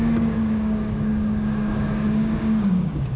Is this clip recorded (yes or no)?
no